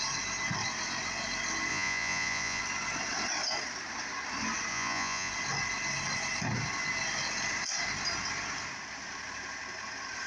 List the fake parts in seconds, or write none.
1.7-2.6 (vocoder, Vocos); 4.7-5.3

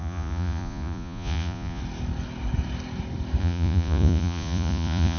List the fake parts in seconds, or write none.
0.0-1.8 (vocoder, Vocos); 3.4-5.2

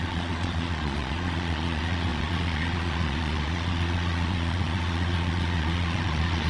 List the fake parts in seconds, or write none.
0.0-6.5 (vocoder, Vocos)

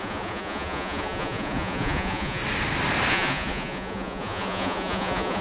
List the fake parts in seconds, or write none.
0.0-2.4 (vocoder, Vocos); 3.1-5.4

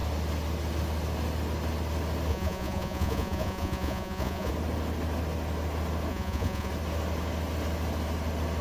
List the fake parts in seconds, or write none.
2.3-4.5 (vocoder, Vocos); 6.1-6.7

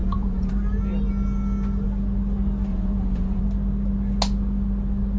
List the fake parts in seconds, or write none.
0.0-0.5 (vocoder, Vocos); 2.7-3.4

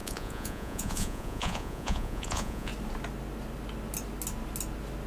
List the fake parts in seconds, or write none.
0.0-2.7 (vocoder, Vocos)